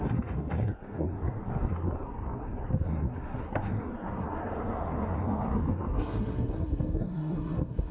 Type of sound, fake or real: fake